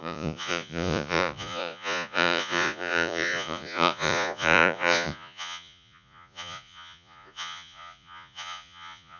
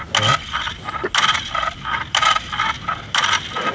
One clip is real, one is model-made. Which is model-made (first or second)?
first